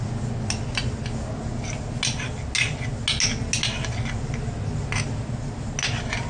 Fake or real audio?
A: real